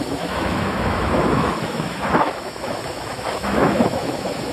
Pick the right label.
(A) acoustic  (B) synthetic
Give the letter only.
B